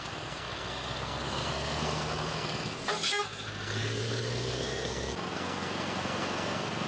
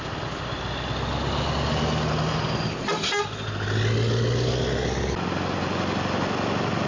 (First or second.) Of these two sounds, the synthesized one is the first